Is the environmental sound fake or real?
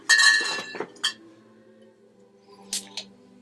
real